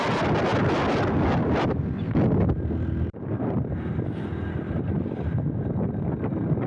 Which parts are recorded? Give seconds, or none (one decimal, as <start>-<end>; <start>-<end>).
0.0-6.7